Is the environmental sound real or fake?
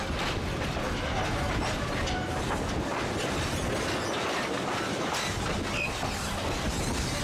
real